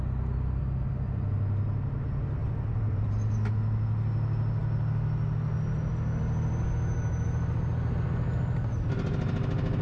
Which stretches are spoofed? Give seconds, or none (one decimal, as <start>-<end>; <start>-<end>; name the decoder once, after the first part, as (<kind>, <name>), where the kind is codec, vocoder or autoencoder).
2.4-3.1 (vocoder, BigVGAN v2)